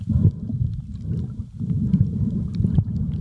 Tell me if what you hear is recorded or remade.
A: remade